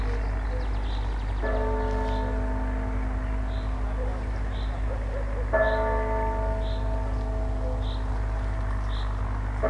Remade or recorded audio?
recorded